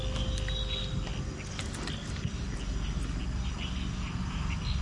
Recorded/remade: recorded